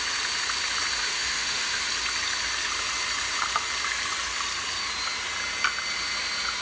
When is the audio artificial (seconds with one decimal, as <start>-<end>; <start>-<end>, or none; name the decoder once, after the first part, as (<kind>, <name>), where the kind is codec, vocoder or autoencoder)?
1.0-1.8 (autoencoder, DAC-VAE)